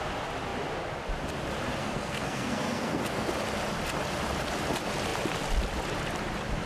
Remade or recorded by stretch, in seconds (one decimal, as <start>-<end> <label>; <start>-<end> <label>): 0.0-1.8 recorded; 1.8-3.3 remade; 3.3-6.7 recorded